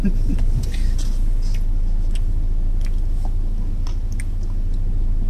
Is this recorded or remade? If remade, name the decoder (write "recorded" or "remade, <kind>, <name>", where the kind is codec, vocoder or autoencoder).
recorded